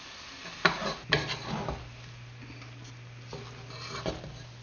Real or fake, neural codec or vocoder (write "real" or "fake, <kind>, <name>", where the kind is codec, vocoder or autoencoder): real